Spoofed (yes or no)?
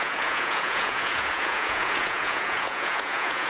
yes